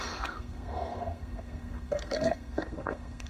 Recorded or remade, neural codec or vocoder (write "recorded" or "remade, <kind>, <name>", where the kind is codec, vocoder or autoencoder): remade, codec, SNAC